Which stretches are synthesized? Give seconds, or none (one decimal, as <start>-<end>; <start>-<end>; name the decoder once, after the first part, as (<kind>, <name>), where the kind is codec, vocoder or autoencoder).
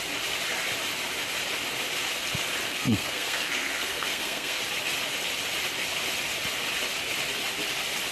2.7-4.6 (codec, SNAC)